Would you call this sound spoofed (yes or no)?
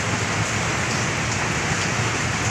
no